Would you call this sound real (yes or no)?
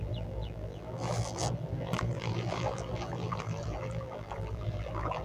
no